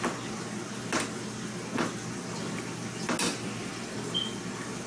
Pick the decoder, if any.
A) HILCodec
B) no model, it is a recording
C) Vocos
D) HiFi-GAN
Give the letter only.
B